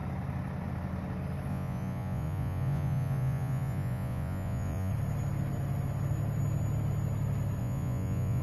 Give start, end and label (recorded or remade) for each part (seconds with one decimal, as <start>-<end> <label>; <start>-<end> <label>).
0.0-1.5 recorded; 1.5-4.9 remade; 4.9-7.6 recorded; 7.6-8.4 remade